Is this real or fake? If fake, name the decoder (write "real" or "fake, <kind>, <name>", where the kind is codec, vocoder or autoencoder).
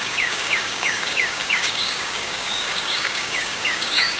fake, codec, DAC